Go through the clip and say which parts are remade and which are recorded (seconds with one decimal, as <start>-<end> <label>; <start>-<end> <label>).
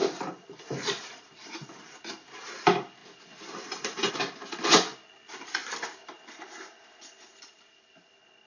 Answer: 0.0-2.1 remade; 2.1-5.6 recorded; 5.6-6.2 remade; 6.2-8.5 recorded